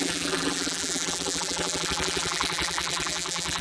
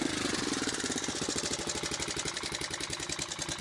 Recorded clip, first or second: second